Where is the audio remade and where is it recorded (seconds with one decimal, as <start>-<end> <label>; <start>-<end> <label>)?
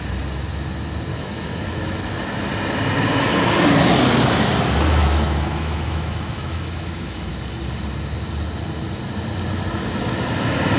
0.0-1.1 recorded; 1.1-2.0 remade; 2.0-5.0 recorded; 5.0-7.3 remade; 7.3-10.8 recorded